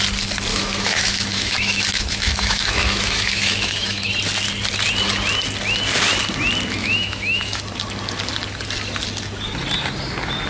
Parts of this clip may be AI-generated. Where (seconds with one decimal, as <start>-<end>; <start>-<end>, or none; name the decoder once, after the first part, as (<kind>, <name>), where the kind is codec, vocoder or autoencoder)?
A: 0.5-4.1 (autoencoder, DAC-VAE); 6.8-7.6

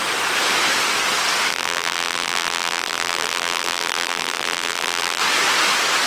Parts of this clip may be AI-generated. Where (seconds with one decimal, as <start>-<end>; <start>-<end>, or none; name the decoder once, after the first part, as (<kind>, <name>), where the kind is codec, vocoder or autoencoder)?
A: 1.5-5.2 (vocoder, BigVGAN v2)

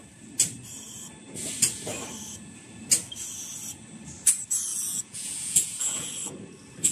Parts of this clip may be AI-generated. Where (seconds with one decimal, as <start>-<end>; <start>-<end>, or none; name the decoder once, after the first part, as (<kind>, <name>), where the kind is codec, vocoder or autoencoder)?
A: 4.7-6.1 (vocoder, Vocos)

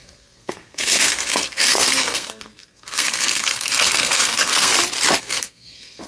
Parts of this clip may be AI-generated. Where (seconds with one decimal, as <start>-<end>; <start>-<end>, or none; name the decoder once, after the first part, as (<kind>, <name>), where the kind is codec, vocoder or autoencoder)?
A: 0.0-4.7 (codec, SNAC); 5.2-6.1

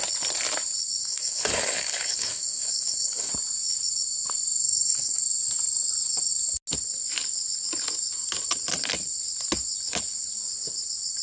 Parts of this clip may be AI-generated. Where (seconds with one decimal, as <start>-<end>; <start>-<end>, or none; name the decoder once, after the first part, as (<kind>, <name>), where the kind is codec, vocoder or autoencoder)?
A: 1.0-3.3 (codec, DAC); 4.6-5.2

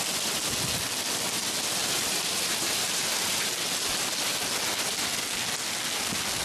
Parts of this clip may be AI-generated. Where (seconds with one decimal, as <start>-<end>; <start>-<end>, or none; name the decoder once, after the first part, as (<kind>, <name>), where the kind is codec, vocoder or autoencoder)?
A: 1.8-3.5 (vocoder, BigVGAN v2)

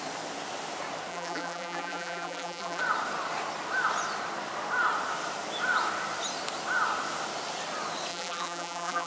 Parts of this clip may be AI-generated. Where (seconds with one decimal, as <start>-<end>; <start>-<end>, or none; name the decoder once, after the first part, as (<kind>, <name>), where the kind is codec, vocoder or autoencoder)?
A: 1.1-2.8 (vocoder, BigVGAN v2); 8.1-9.1